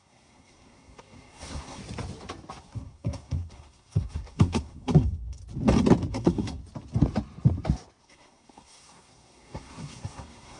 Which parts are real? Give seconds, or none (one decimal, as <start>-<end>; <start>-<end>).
1.8-2.6; 5.4-6.1; 6.6-8.0